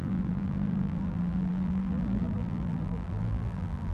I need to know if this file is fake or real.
fake